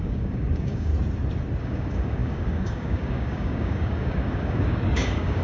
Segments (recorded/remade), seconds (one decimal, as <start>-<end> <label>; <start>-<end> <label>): 0.0-0.9 remade; 0.9-1.6 recorded; 1.6-5.4 remade